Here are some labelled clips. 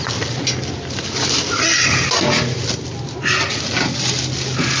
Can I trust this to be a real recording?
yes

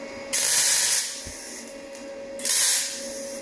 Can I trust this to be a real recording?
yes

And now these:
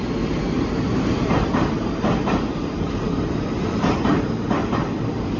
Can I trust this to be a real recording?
no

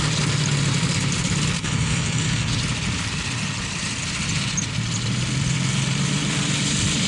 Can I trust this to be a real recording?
no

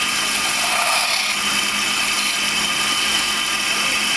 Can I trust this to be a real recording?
yes